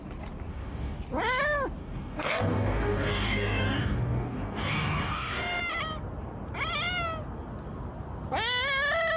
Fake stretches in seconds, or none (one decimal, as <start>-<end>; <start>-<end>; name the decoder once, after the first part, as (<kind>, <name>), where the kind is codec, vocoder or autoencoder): 0.5-1.0 (codec, DAC); 1.8-5.6